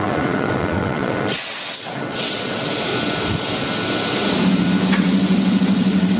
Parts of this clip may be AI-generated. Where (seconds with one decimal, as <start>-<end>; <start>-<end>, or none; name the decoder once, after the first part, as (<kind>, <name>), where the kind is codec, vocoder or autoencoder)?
0.0-2.9 (vocoder, WaveNeXt); 4.8-6.2